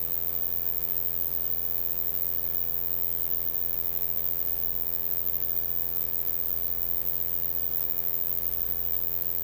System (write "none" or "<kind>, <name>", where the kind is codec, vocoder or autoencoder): vocoder, BigVGAN v2